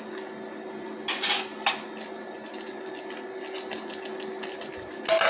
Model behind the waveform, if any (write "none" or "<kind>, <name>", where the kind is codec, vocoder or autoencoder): none